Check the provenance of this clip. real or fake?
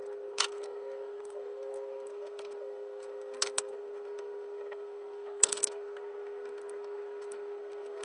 fake